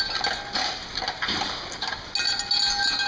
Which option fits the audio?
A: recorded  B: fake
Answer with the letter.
A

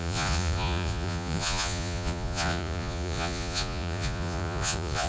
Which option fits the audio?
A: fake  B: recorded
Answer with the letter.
A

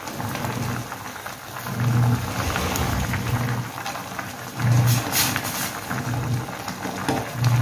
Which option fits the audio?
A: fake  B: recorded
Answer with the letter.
B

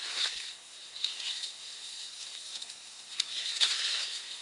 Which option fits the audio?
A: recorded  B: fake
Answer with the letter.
B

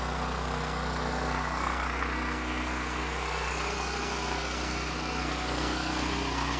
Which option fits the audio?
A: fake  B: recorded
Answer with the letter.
A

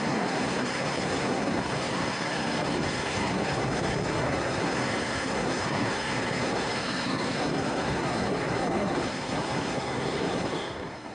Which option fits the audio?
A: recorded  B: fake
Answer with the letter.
B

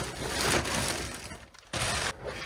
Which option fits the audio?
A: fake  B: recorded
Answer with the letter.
B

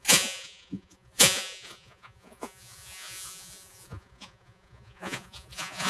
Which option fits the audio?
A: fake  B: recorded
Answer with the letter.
A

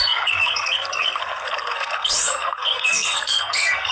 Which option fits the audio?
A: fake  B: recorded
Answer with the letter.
A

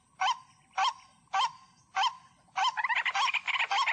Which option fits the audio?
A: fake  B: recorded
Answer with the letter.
B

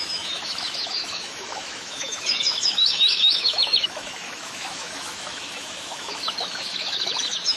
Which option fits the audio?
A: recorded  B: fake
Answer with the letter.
B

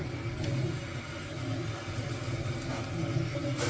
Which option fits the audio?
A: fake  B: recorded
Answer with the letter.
B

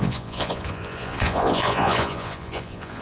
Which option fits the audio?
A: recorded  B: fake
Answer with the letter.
B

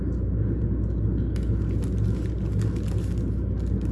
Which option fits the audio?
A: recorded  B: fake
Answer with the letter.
A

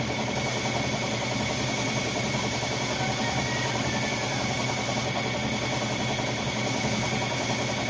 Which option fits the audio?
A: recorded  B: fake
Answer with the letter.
A